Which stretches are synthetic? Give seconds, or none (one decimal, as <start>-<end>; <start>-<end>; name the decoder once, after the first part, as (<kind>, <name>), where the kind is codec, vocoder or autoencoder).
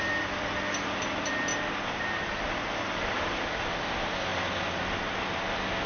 none